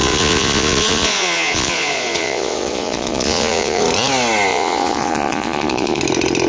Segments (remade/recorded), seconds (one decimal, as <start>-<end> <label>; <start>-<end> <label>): 0.0-3.8 remade; 3.8-4.5 recorded; 4.5-6.0 remade; 6.0-6.5 recorded